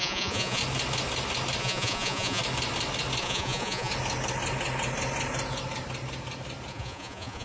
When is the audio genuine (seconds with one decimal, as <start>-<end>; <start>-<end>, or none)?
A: 0.6-1.6; 2.4-3.2; 3.9-6.7